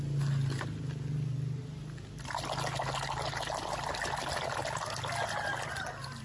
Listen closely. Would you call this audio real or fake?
real